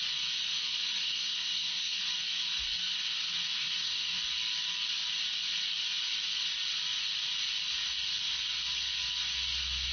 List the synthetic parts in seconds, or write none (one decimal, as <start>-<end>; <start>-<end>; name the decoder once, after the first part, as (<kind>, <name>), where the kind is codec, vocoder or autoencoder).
1.0-2.0 (codec, SNAC); 3.5-4.2